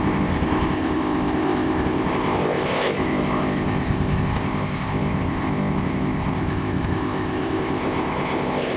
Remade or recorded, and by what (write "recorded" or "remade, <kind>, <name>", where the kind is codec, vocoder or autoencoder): remade, codec, ZipCodec